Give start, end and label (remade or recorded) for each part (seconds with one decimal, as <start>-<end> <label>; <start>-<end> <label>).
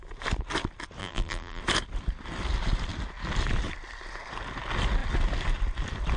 0.0-1.0 recorded; 1.0-1.6 remade; 1.6-6.2 recorded